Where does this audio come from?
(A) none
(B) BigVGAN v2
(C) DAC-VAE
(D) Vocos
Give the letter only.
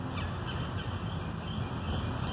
A